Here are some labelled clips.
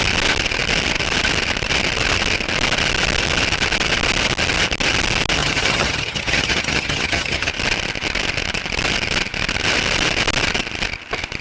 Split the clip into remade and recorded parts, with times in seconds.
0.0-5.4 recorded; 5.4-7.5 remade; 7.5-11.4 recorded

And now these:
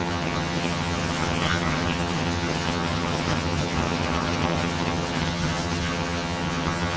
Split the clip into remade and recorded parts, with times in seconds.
0.0-7.0 remade

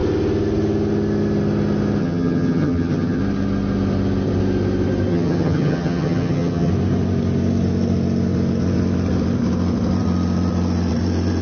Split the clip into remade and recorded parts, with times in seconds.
0.0-2.0 recorded; 2.0-3.2 remade; 3.2-5.1 recorded; 5.1-6.7 remade; 6.7-11.4 recorded

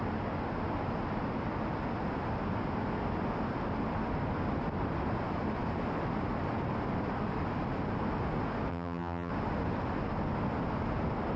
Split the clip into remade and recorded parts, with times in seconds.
0.0-8.7 recorded; 8.7-9.3 remade; 9.3-11.4 recorded